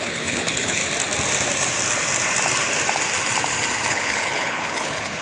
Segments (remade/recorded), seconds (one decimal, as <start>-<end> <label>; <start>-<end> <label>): 0.0-0.8 remade; 0.8-3.9 recorded; 3.9-5.2 remade